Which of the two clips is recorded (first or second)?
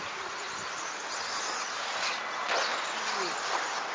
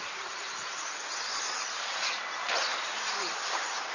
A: first